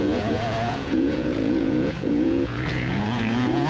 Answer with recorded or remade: remade